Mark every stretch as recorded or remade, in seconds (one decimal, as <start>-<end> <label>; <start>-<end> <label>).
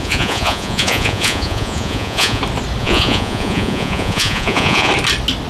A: 0.0-2.4 remade; 2.4-2.8 recorded; 2.8-4.9 remade; 4.9-5.5 recorded